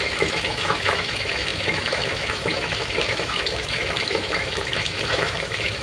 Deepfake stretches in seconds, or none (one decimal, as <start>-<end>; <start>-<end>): 0.0-5.8